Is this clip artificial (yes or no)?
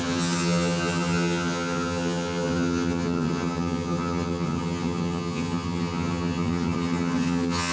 yes